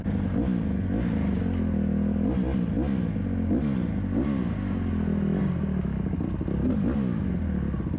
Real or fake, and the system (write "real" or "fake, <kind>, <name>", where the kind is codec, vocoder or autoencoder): real